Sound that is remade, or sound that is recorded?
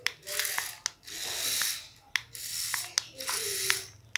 recorded